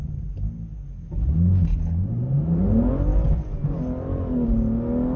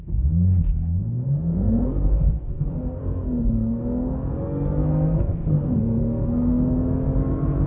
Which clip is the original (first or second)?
first